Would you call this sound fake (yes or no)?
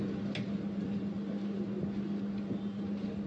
no